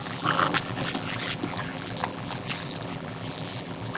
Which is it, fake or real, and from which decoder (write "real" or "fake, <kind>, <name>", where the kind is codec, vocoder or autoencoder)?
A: fake, vocoder, BigVGAN v2